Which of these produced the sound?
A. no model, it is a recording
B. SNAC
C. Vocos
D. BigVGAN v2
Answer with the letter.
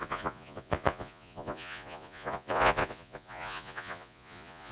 C